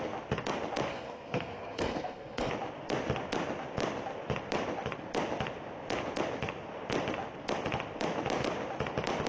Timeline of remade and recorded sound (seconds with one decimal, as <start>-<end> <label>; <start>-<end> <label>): 0.0-0.9 recorded; 0.9-2.5 remade; 2.5-9.3 recorded